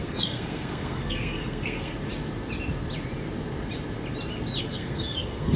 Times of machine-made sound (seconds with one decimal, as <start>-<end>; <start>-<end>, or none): 0.0-1.9; 4.6-5.6